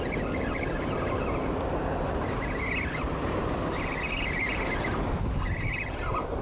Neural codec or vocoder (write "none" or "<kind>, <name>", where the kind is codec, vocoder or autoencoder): none